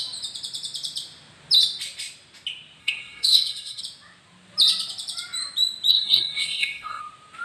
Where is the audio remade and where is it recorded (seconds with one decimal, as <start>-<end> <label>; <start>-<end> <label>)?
0.0-2.8 recorded; 2.8-3.8 remade; 3.8-5.9 recorded; 5.9-7.0 remade; 7.0-7.4 recorded